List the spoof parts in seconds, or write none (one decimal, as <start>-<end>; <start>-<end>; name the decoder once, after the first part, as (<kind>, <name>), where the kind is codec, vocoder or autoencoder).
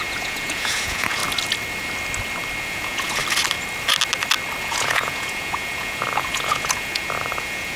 0.0-1.2 (vocoder, Vocos); 2.6-3.2; 4.6-7.8